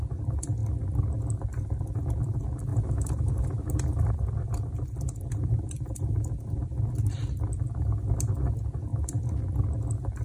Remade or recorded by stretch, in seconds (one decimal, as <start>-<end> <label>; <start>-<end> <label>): 0.0-2.7 recorded; 2.7-6.7 remade; 6.7-8.9 recorded; 8.9-9.4 remade; 9.4-10.2 recorded